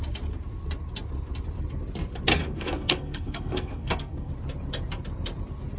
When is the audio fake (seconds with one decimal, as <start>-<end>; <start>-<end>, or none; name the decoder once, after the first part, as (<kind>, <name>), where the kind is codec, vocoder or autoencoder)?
2.4-4.3 (codec, SNAC)

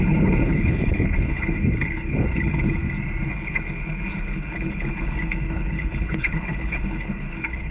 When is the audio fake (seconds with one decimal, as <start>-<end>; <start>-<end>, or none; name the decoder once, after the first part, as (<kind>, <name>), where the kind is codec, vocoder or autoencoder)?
0.0-2.8 (codec, HILCodec); 3.3-7.7

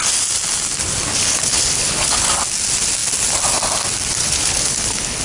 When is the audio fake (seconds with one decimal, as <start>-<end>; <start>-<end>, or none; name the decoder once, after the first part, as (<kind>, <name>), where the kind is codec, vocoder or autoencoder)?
1.2-2.3 (codec, HILCodec); 4.2-5.2

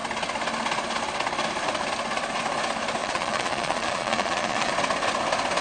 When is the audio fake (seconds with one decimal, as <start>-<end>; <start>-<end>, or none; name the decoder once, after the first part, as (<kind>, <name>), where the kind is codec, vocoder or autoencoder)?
3.0-4.7 (vocoder, Vocos)